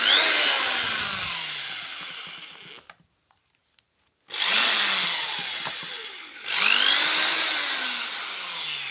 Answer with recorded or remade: recorded